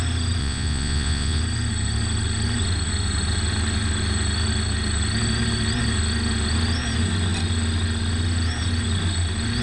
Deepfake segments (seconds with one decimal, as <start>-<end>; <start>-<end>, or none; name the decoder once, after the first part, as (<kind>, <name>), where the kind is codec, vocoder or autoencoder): 0.4-1.4 (vocoder, Vocos)